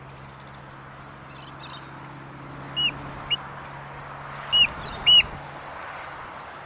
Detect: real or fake real